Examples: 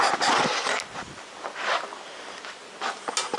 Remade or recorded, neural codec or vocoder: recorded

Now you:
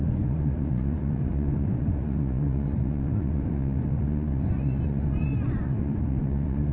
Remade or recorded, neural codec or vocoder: remade, vocoder, Vocos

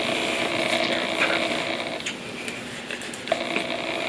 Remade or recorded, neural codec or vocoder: recorded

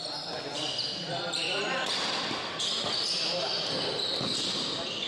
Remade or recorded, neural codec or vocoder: recorded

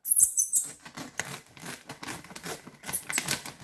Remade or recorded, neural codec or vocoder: recorded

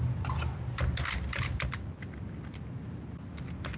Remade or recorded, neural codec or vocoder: recorded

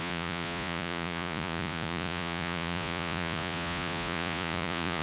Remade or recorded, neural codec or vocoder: remade, vocoder, Vocos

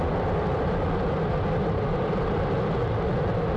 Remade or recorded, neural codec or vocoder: recorded